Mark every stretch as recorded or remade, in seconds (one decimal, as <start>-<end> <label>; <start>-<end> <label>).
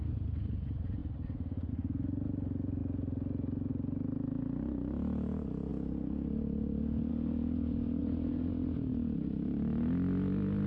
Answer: 0.0-1.0 recorded; 1.0-1.7 remade; 1.7-8.0 recorded; 8.0-8.5 remade; 8.5-10.7 recorded